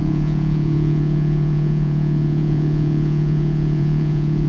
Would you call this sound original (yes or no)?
no